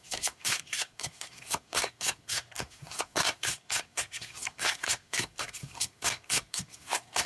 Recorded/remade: remade